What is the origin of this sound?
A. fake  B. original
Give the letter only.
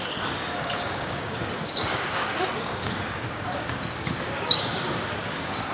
A